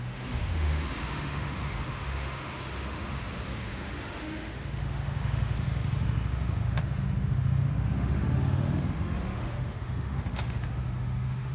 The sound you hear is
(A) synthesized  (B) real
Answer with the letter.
A